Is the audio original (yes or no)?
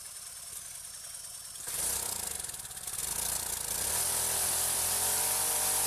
yes